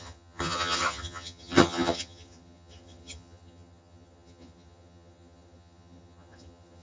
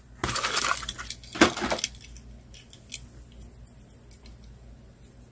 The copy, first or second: first